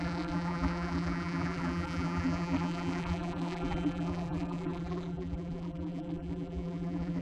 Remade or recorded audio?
remade